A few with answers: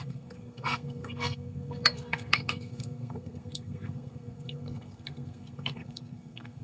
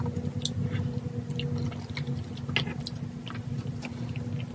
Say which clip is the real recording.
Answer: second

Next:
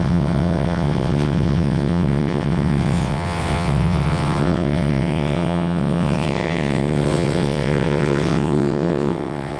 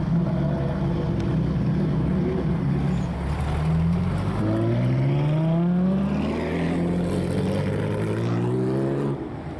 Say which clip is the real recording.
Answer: second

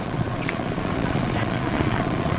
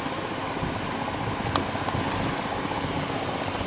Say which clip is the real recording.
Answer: second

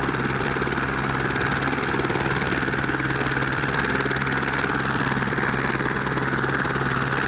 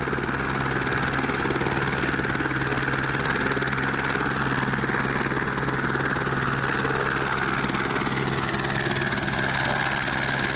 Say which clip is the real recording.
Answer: second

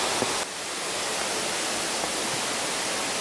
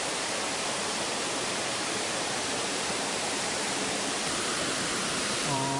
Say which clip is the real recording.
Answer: first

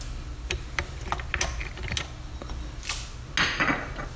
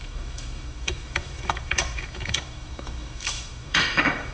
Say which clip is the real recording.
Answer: first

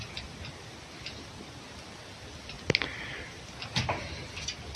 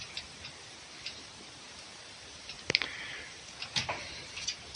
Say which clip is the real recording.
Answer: first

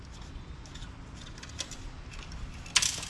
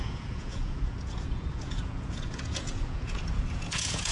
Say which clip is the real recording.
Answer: first